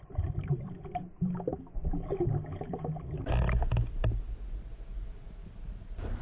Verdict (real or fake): real